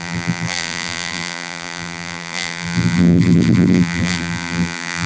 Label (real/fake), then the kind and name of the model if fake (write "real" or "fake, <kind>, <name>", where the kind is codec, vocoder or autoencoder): fake, vocoder, BigVGAN v2